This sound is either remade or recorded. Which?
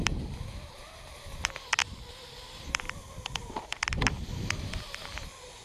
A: remade